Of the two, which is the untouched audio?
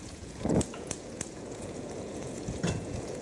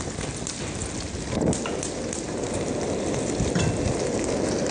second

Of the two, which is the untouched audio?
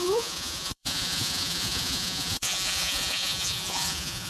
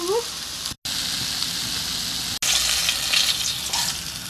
second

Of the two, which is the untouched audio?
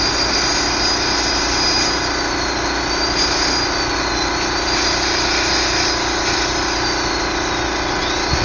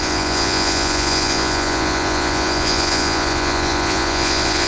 first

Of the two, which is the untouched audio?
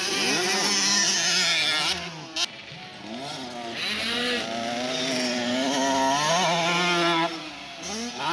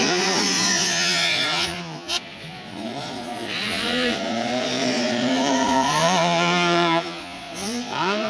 first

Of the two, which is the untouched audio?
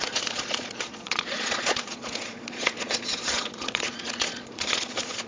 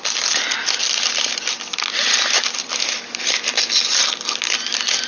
second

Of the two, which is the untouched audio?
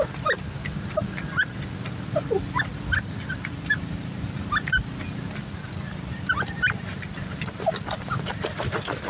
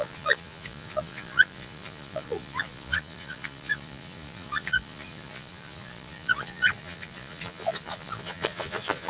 first